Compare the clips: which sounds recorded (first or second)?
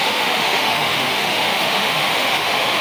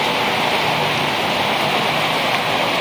second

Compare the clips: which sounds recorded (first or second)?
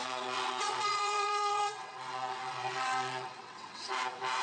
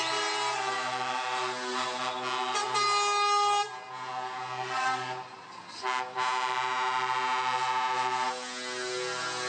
second